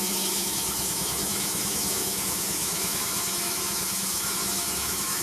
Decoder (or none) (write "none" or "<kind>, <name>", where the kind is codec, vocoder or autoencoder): autoencoder, DAC-VAE